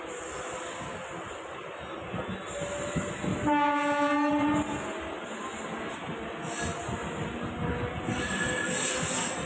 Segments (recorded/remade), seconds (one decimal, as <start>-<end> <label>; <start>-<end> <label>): 0.0-9.5 recorded